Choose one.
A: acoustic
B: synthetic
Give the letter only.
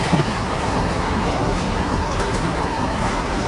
B